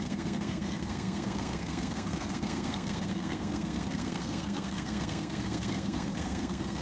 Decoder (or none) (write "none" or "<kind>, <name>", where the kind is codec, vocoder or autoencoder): codec, SNAC